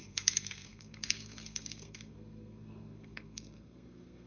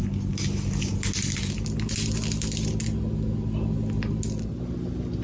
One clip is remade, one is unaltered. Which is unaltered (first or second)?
second